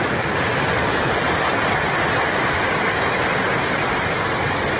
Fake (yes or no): no